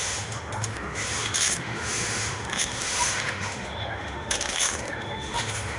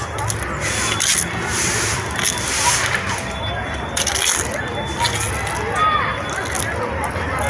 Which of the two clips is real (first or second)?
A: second